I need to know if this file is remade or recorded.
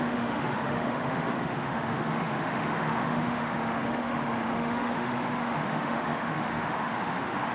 remade